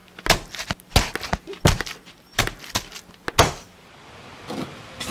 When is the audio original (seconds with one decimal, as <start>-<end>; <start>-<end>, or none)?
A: 0.0-5.1